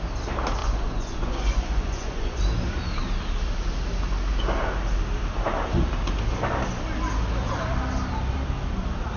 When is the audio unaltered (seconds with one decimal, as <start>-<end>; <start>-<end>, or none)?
0.0-0.6; 2.4-9.2

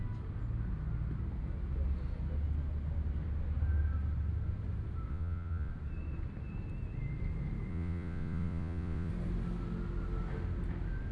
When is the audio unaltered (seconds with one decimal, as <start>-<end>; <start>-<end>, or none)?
0.0-5.1; 5.7-7.7; 9.1-11.1

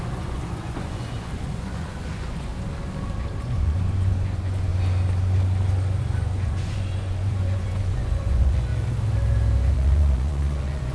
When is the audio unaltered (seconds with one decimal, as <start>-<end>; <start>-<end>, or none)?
2.5-3.4; 4.7-6.0; 8.7-9.7

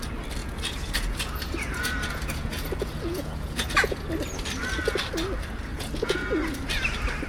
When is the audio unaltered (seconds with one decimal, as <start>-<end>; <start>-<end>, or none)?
0.0-0.4; 4.1-5.7; 6.4-7.3

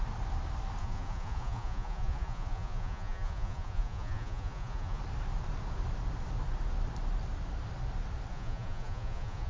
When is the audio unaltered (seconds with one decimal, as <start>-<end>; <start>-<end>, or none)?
0.0-0.8; 5.0-8.3